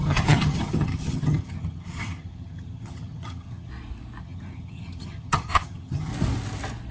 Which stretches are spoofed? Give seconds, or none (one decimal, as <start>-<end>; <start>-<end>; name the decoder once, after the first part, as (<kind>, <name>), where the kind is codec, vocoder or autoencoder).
0.0-3.7 (vocoder, HiFi-GAN); 4.2-6.1